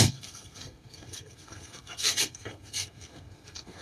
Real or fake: fake